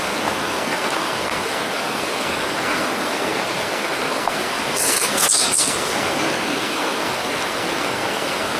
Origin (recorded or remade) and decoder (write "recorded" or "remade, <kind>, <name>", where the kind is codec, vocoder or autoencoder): remade, codec, SNAC